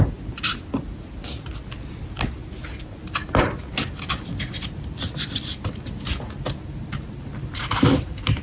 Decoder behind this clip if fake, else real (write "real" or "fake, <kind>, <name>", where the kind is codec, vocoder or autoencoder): real